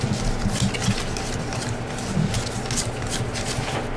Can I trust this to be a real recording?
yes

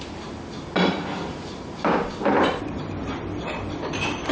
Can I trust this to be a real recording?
no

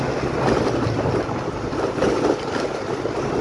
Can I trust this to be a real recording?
yes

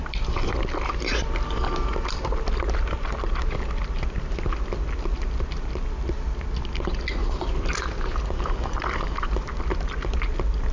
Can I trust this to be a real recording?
yes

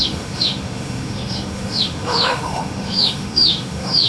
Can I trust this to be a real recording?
no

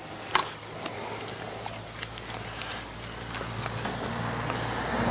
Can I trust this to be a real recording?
yes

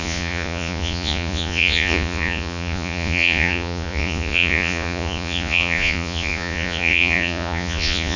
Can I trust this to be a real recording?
no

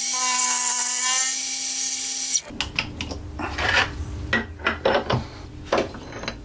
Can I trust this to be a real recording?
yes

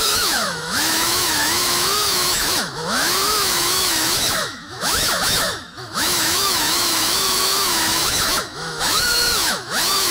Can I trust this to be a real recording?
no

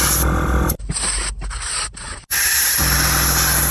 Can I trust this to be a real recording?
yes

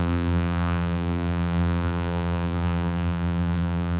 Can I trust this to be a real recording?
no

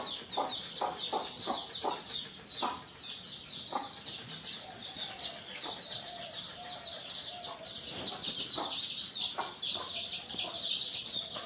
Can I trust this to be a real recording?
yes